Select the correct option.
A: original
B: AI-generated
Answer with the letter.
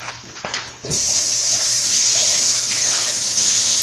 B